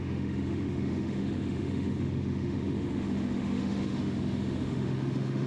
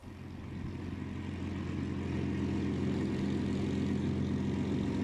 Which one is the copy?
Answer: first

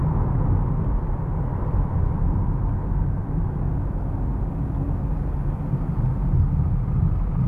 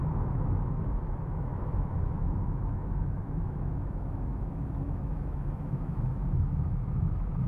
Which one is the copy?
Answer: second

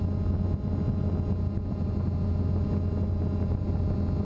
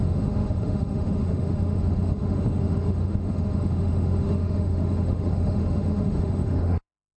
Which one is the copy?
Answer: second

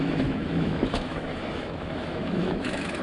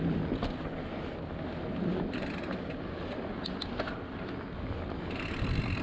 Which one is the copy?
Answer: first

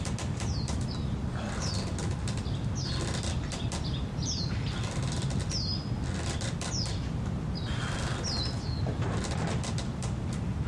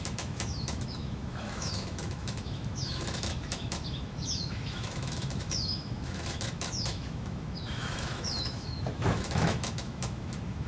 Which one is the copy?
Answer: second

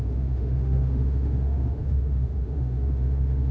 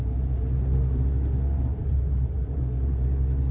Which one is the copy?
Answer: first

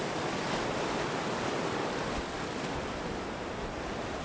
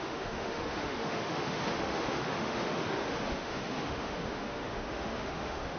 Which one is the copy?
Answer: second